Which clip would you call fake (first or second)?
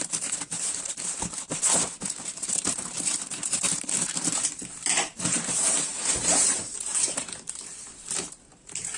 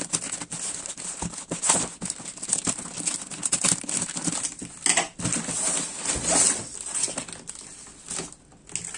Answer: first